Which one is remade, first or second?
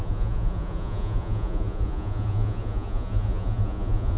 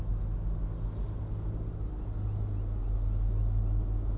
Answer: first